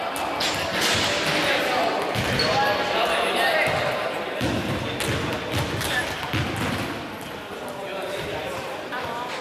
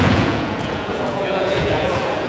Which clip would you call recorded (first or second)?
first